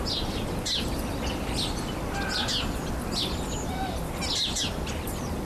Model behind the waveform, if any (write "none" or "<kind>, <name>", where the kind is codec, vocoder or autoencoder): none